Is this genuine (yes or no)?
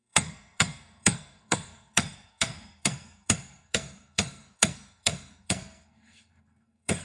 no